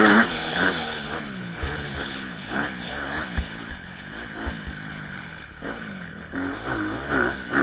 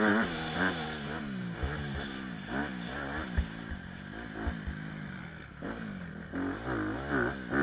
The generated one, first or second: first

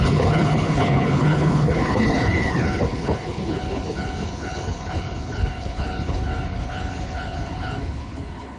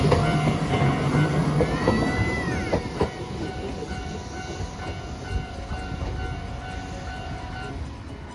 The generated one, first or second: first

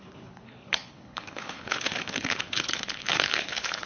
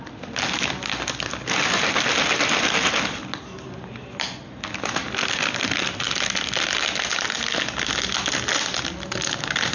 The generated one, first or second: first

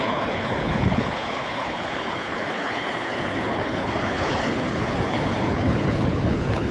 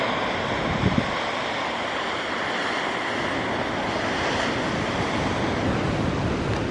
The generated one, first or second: first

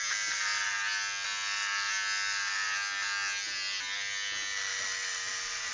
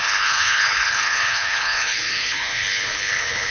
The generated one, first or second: second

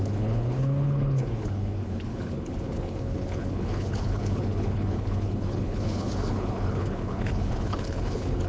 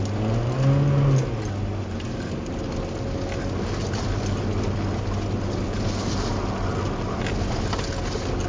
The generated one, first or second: first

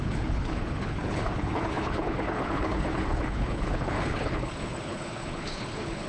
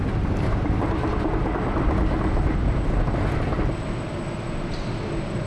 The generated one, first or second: first